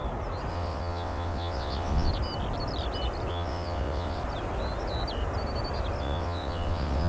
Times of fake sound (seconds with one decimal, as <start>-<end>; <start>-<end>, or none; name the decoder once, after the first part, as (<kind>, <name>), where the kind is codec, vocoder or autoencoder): 0.5-2.1 (vocoder, WaveNeXt); 3.3-4.2; 6.0-7.1